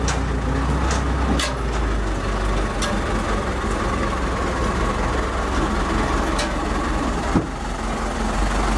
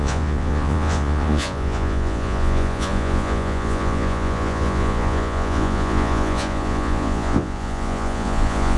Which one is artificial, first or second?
second